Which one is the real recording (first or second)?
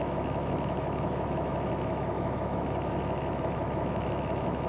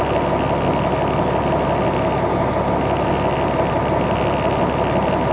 second